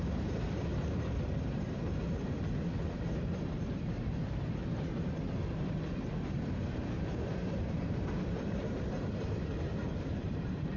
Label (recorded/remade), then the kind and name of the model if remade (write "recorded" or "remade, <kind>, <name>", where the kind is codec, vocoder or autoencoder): remade, vocoder, BigVGAN v2